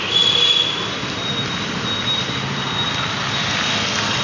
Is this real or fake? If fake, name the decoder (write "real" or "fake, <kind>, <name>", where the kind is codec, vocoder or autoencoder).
real